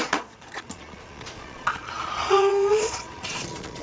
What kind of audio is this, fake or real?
fake